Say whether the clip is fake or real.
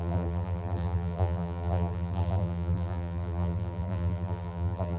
fake